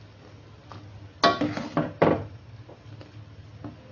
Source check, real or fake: real